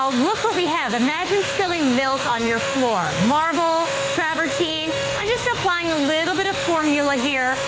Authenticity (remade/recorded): remade